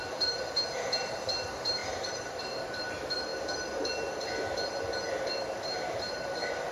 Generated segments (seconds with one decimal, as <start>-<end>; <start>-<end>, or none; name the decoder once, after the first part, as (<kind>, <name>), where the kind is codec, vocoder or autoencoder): 0.0-3.3 (vocoder, BigVGAN v2); 5.1-6.7